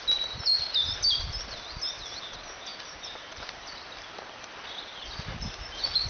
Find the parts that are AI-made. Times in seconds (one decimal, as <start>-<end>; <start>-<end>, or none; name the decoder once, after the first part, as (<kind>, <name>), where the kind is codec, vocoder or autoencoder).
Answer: 2.7-3.5 (vocoder, BigVGAN v2)